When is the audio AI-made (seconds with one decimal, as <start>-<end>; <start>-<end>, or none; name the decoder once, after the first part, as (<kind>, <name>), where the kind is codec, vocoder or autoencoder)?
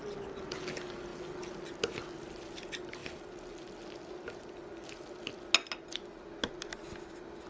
none